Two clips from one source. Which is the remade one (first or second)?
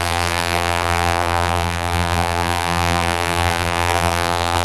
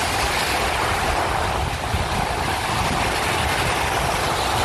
first